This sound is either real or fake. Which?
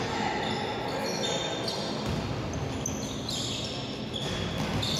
real